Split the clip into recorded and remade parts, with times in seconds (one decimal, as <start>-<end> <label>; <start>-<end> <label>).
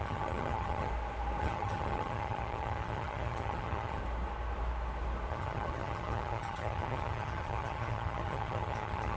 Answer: 0.0-0.9 remade; 0.9-1.4 recorded; 1.4-4.0 remade; 4.0-5.3 recorded; 5.3-9.2 remade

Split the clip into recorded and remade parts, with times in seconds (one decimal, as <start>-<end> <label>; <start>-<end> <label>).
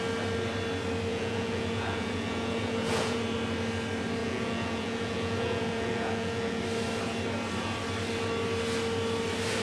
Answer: 0.0-1.1 recorded; 1.1-3.2 remade; 3.2-4.2 recorded; 4.2-6.6 remade; 6.6-9.6 recorded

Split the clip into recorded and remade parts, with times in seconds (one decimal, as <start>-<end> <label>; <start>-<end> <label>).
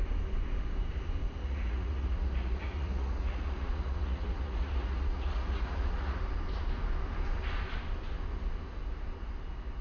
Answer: 0.0-1.4 recorded; 1.4-6.2 remade; 6.2-9.8 recorded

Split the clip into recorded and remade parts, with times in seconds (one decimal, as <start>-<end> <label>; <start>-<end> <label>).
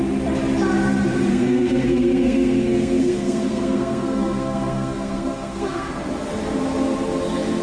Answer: 0.0-1.3 recorded; 1.3-5.9 remade; 5.9-7.6 recorded